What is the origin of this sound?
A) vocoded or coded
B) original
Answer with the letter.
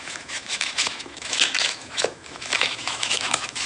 A